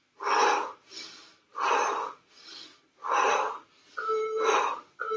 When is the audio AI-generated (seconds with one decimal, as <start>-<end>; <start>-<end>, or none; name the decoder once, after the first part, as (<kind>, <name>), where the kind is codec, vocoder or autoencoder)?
0.0-2.7 (vocoder, BigVGAN v2); 3.3-5.2